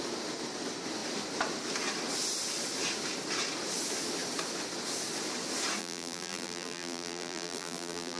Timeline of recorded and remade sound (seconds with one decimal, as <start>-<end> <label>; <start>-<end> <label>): 0.0-5.8 recorded; 5.8-8.2 remade